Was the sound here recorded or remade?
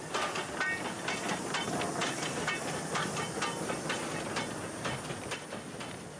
recorded